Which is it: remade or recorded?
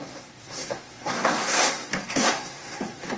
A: remade